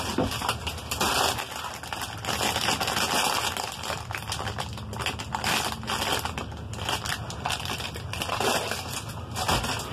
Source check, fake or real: real